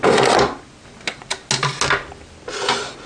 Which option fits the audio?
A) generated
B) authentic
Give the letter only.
B